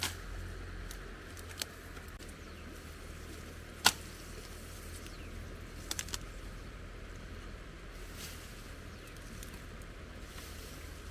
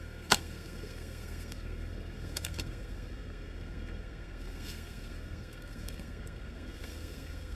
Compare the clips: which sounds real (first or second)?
first